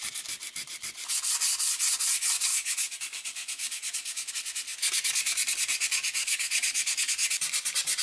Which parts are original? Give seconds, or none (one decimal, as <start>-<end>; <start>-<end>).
0.0-2.5; 4.3-6.2; 7.1-8.0